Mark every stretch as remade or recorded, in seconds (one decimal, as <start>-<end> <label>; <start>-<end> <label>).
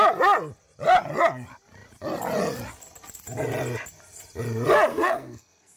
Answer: 0.0-4.9 recorded; 4.9-5.8 remade